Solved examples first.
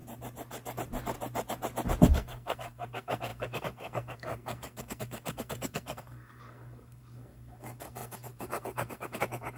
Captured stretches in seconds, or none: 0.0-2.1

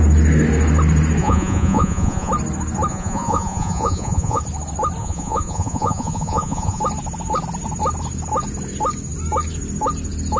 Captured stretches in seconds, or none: 0.0-1.2; 2.3-2.9; 4.4-5.0; 6.8-10.4